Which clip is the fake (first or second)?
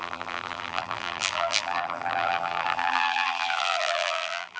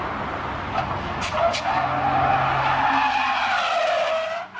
first